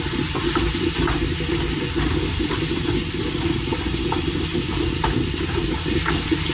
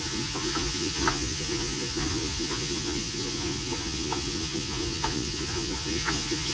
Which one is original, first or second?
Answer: first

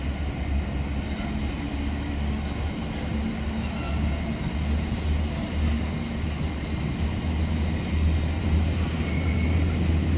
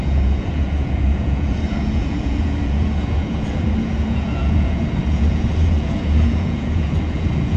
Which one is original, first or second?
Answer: first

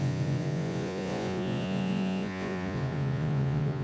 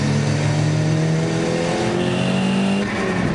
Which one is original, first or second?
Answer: second